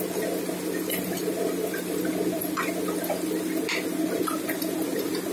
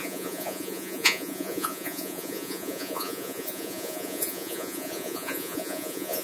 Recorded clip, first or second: first